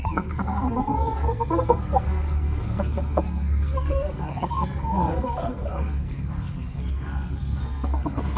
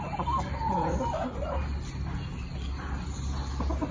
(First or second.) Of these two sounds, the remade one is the first